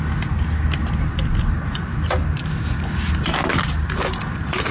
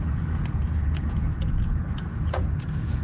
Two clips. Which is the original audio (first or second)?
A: first